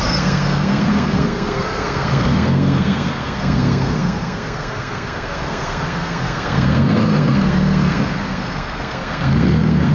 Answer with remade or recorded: remade